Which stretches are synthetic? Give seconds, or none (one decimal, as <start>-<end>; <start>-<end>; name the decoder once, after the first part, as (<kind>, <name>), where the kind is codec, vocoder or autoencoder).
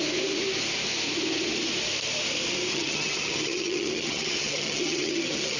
2.7-5.6 (vocoder, HiFi-GAN)